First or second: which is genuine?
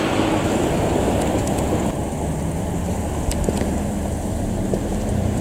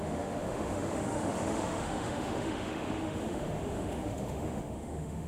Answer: first